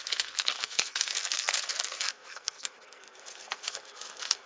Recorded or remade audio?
remade